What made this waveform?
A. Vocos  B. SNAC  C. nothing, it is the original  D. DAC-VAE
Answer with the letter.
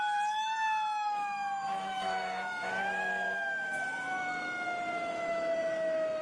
D